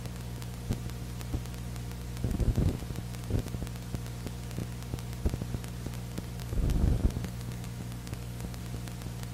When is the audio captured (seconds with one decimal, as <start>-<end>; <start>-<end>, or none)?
0.0-2.3; 2.8-6.4; 8.6-9.3